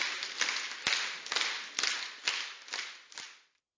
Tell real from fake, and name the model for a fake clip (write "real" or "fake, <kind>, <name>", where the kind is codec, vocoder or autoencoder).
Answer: real